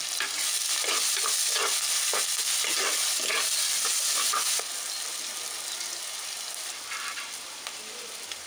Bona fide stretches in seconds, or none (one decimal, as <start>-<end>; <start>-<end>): 0.0-8.5